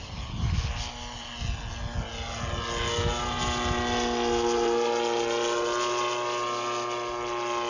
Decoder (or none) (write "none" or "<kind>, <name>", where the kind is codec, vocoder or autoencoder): none